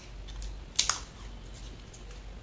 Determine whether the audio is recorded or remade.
recorded